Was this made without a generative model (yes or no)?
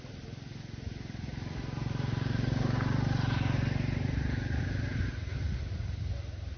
yes